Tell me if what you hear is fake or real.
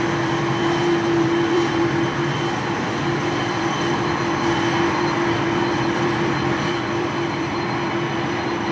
fake